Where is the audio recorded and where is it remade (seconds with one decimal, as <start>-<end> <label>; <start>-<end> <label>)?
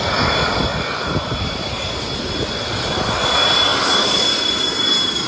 0.0-0.7 remade; 0.7-2.2 recorded; 2.2-3.7 remade; 3.7-5.3 recorded